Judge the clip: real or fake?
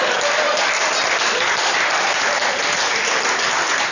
real